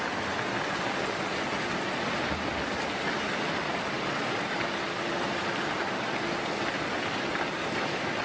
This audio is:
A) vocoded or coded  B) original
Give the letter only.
B